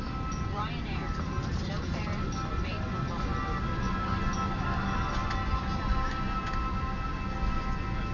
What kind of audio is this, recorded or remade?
recorded